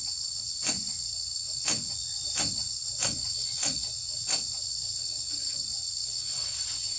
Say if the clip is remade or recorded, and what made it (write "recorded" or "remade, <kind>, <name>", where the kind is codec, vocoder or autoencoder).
remade, vocoder, WaveNeXt